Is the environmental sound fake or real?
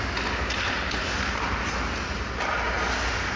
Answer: real